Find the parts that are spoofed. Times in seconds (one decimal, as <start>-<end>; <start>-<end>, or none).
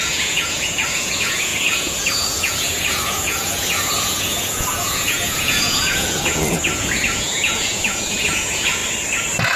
0.0-8.8